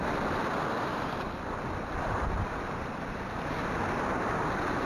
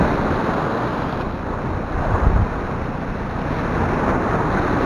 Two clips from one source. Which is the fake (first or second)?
first